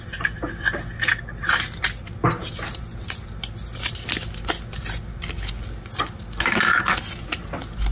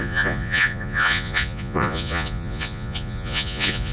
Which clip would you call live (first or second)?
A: first